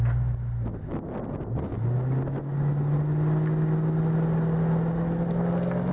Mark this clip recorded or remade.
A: recorded